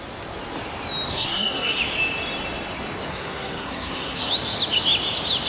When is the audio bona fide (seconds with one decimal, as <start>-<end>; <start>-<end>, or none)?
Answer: 0.0-1.1; 1.8-3.1; 4.3-5.5